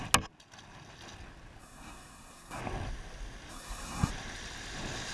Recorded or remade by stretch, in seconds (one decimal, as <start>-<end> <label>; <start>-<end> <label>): 0.0-1.6 recorded; 1.6-2.6 remade; 2.6-3.5 recorded; 3.5-4.1 remade; 4.1-5.1 recorded